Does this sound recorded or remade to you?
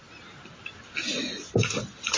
recorded